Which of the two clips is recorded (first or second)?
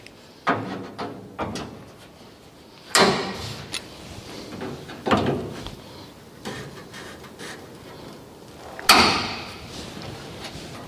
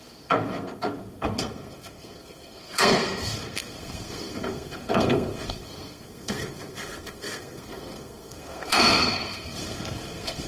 first